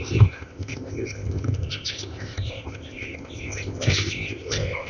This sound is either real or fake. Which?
fake